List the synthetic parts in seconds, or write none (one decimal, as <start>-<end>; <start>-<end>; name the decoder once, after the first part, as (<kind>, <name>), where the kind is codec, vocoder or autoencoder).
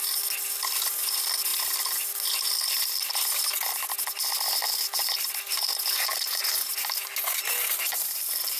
none